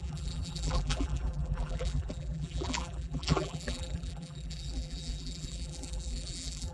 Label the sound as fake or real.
fake